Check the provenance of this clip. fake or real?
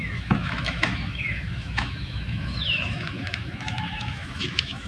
fake